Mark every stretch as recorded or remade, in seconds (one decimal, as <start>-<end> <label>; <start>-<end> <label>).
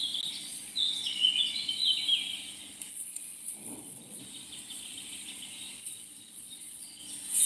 0.0-0.4 recorded; 0.4-1.7 remade; 1.7-2.9 recorded; 2.9-4.2 remade; 4.2-5.8 recorded; 5.8-7.0 remade; 7.0-7.5 recorded